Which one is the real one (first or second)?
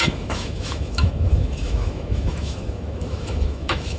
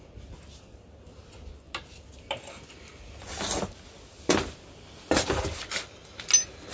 second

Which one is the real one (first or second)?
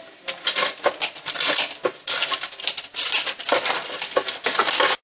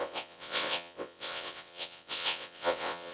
first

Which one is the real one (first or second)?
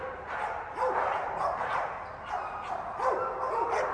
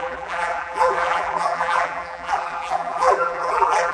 first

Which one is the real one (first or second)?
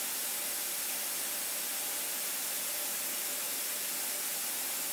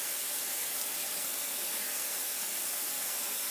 first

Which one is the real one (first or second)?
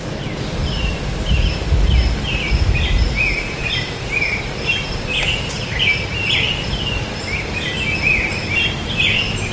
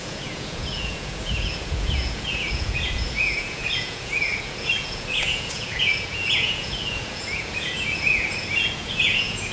first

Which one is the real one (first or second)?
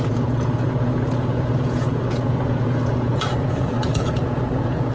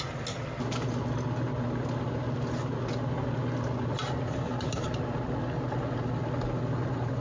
second